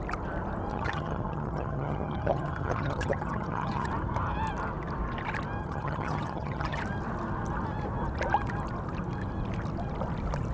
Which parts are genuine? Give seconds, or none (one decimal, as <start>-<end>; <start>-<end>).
0.0-0.7; 3.9-5.6; 6.8-10.5